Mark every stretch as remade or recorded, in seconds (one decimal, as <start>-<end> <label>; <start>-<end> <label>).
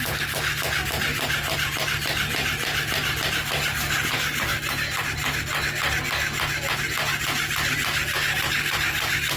0.0-4.5 recorded; 4.5-5.0 remade; 5.0-9.4 recorded